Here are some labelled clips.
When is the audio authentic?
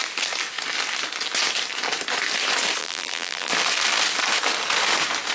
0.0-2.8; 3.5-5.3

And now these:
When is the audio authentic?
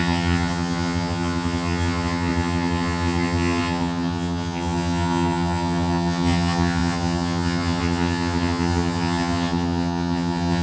none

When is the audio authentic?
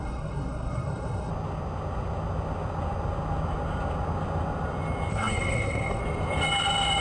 1.3-5.1; 6.0-7.0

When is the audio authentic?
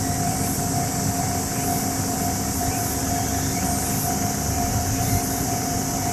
0.0-6.1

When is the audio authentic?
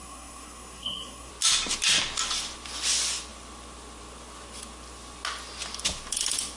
1.3-6.6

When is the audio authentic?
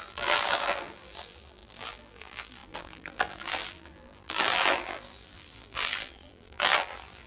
none